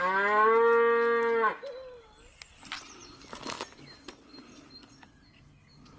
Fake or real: real